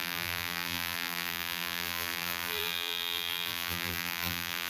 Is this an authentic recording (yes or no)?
no